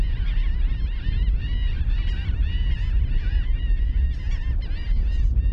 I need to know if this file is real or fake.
real